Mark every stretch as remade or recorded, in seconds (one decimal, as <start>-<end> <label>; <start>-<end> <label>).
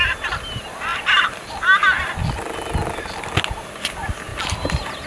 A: 0.0-5.1 recorded